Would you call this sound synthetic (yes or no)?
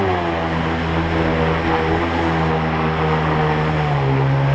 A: no